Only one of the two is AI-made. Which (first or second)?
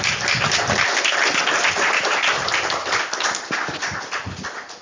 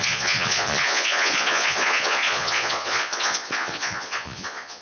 second